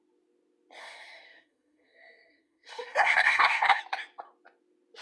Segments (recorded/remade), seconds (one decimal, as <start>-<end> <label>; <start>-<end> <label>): 0.0-0.8 recorded; 0.8-3.8 remade; 3.8-5.0 recorded